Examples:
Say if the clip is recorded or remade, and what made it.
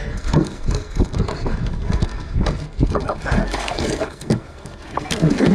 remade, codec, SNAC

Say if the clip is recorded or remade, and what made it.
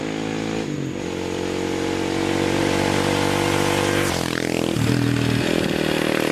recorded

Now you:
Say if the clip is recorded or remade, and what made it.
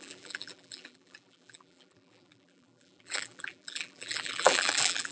remade, vocoder, BigVGAN v2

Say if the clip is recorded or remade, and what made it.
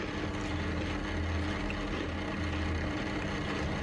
recorded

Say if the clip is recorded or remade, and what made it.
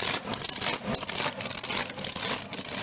recorded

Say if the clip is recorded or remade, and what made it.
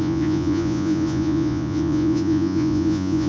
remade, vocoder, Vocos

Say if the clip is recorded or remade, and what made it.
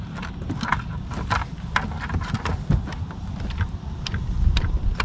recorded